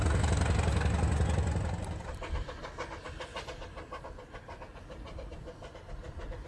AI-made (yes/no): no